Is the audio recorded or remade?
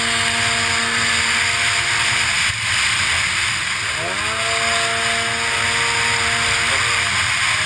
recorded